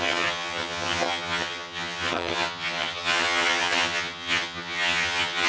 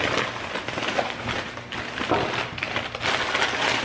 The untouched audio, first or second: second